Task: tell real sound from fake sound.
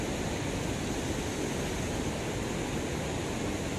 real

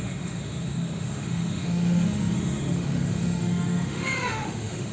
fake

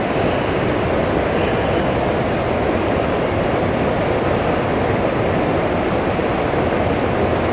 real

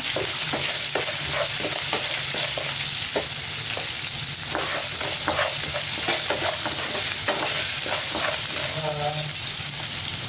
real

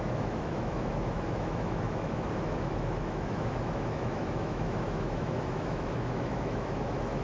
fake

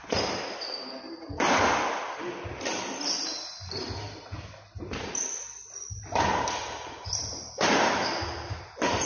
real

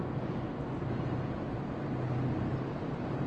real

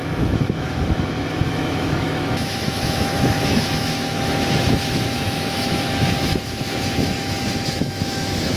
fake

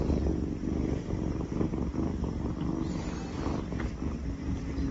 real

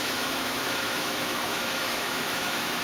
fake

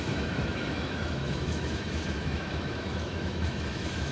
fake